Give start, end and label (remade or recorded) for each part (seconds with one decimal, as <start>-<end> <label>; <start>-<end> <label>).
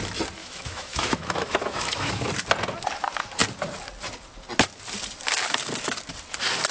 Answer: 0.0-0.4 recorded; 0.4-2.3 remade; 2.3-6.7 recorded